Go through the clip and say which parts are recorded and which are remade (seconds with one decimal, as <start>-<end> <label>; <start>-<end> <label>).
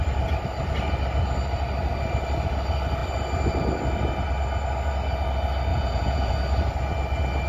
0.0-5.7 recorded; 5.7-6.3 remade; 6.3-7.5 recorded